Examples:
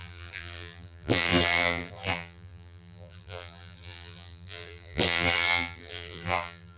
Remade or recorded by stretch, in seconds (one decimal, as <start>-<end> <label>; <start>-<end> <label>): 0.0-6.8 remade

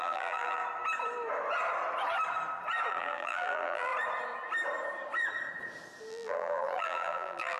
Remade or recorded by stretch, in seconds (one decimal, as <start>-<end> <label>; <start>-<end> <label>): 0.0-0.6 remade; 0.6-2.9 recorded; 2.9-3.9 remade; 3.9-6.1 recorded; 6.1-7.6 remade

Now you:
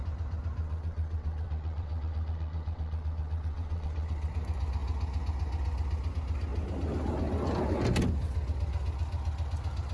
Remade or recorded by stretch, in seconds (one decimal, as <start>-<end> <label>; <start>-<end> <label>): 0.0-0.6 recorded; 0.6-4.3 remade; 4.3-9.9 recorded

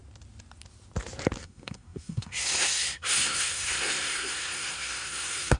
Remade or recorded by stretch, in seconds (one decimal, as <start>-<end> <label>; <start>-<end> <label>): 0.0-1.4 recorded; 1.4-5.6 remade

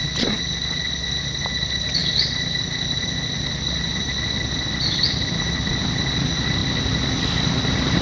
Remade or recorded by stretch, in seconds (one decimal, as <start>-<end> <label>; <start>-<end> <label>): 0.0-8.0 recorded

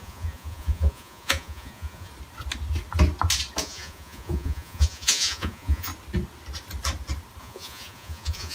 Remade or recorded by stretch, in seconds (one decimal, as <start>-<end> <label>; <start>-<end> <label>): 0.0-2.1 remade; 2.1-3.6 recorded; 3.6-5.9 remade; 5.9-7.4 recorded; 7.4-8.5 remade

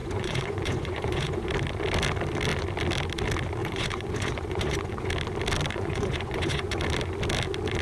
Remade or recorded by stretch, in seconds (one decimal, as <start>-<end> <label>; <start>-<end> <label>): 0.0-1.5 remade; 1.5-3.6 recorded; 3.6-5.1 remade; 5.1-5.7 recorded; 5.7-6.8 remade; 6.8-7.8 recorded